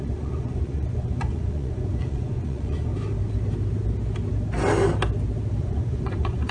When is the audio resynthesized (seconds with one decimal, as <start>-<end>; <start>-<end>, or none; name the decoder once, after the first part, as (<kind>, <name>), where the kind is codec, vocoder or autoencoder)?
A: 0.0-2.9 (vocoder, Vocos); 5.6-6.5